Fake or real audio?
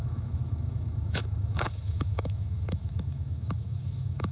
fake